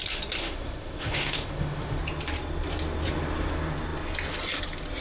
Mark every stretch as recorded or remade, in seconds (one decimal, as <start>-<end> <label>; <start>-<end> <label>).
0.0-0.4 recorded; 0.4-2.0 remade; 2.0-5.0 recorded